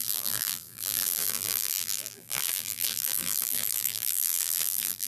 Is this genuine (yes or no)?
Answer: no